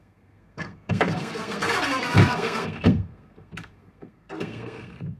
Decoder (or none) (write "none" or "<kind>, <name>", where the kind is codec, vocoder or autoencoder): codec, SNAC